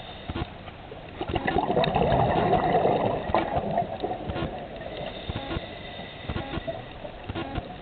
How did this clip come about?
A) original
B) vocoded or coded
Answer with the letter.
A